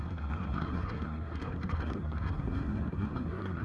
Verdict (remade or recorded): remade